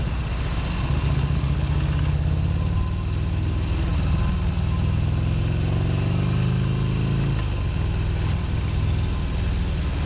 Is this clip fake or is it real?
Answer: real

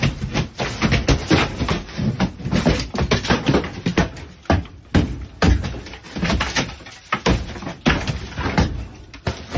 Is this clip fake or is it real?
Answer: real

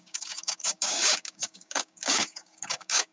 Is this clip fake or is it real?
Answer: fake